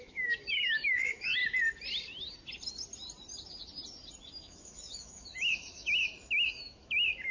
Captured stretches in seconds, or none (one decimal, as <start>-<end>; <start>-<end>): 1.4-4.4